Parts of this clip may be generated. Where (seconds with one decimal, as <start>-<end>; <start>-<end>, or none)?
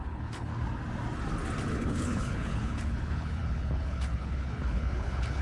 0.0-0.5; 1.7-5.4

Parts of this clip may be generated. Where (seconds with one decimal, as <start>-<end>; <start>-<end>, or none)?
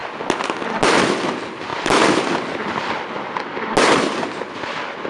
1.7-3.0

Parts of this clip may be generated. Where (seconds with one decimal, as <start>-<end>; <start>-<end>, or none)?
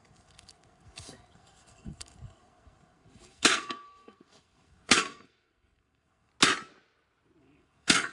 0.0-6.3; 7.4-8.1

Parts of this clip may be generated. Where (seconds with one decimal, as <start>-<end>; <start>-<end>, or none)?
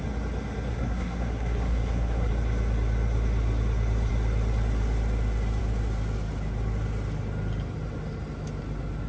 0.7-2.3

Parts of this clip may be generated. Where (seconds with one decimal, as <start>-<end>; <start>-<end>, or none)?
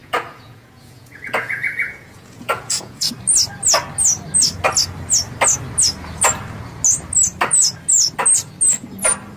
0.0-3.1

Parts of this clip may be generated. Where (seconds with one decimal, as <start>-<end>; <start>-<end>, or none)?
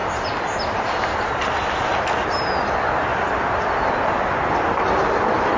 none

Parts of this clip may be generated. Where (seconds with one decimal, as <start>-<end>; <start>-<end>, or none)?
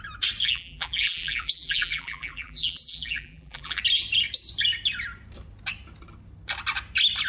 0.4-3.8